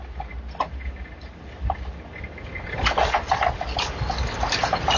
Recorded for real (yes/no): yes